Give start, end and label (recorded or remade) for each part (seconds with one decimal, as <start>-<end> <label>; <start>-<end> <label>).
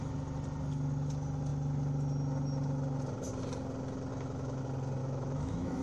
0.0-4.1 recorded; 4.1-4.6 remade; 4.6-5.0 recorded; 5.0-5.8 remade